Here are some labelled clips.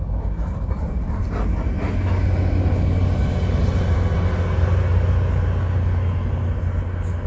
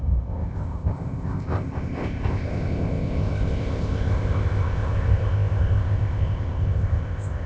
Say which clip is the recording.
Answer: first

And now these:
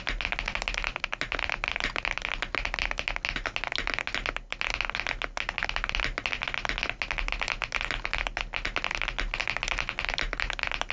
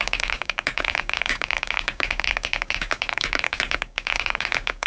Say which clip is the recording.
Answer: first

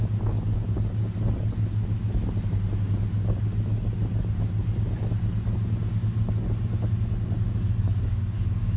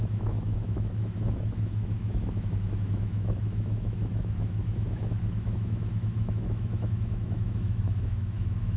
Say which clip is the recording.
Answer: first